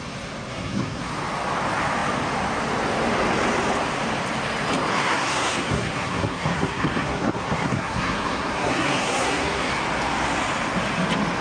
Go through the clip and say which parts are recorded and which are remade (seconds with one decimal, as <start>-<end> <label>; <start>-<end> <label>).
0.0-0.5 recorded; 0.5-1.1 remade; 1.1-4.9 recorded; 4.9-9.7 remade; 9.7-11.4 recorded

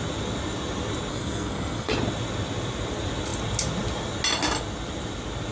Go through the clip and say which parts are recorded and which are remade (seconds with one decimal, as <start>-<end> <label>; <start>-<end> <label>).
0.0-1.1 recorded; 1.1-1.9 remade; 1.9-5.5 recorded

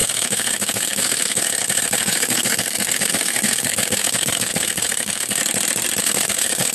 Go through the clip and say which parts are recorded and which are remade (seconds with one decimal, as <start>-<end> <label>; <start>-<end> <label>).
0.0-5.4 remade; 5.4-6.0 recorded; 6.0-6.7 remade

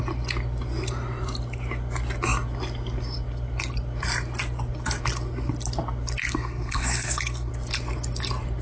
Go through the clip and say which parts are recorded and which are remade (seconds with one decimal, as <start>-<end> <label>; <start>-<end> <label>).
0.0-6.2 recorded; 6.2-7.5 remade; 7.5-8.6 recorded

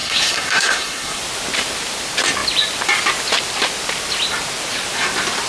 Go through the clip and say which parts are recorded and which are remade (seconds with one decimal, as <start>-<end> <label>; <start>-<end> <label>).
0.0-1.2 remade; 1.2-5.5 recorded

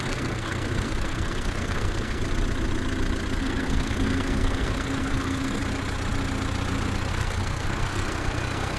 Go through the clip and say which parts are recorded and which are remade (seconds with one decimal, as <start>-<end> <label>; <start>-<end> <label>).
0.0-2.2 remade; 2.2-3.4 recorded; 3.4-5.6 remade; 5.6-7.1 recorded; 7.1-8.8 remade

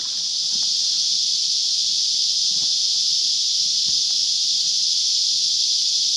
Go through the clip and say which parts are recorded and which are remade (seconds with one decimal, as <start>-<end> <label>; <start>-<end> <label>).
0.0-6.2 recorded